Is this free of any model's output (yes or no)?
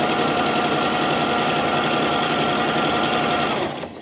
yes